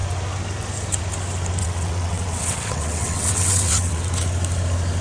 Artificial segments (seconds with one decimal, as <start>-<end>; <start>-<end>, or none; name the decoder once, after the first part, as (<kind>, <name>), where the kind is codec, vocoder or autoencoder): 1.6-4.0 (vocoder, WaveNeXt)